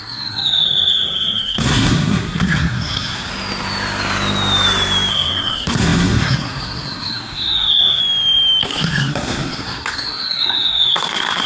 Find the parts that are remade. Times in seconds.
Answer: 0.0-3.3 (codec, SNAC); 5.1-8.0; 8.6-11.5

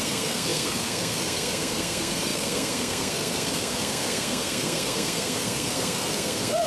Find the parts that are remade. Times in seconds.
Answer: 0.0-6.7 (codec, SNAC)